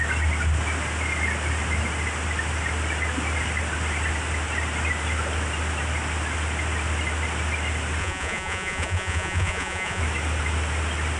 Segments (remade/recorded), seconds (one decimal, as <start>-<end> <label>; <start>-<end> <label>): 0.0-8.0 recorded; 8.0-10.0 remade; 10.0-11.2 recorded